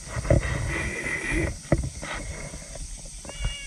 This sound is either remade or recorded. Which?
recorded